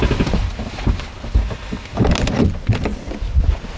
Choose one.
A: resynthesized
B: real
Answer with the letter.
B